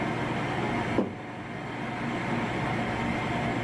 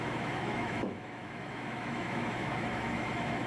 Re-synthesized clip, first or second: second